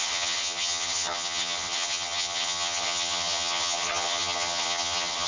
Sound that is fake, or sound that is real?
fake